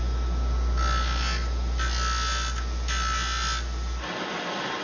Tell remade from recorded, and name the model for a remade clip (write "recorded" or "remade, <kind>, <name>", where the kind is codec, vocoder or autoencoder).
recorded